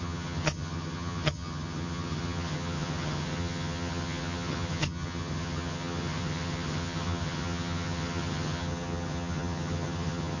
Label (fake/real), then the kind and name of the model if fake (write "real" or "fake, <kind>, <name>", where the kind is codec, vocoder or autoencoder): fake, vocoder, HiFi-GAN